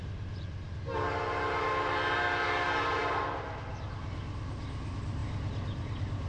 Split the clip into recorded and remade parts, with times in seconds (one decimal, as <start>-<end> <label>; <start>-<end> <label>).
0.0-0.9 remade; 0.9-5.2 recorded; 5.2-6.3 remade